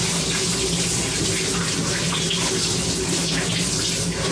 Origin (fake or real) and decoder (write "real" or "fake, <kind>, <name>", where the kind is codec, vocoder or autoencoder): real